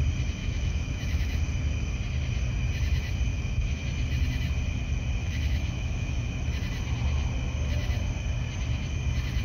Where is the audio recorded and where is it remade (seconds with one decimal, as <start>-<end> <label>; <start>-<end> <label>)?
0.0-0.4 recorded; 0.4-1.4 remade; 1.4-3.3 recorded; 3.3-3.8 remade; 3.8-5.2 recorded; 5.2-6.3 remade; 6.3-9.4 recorded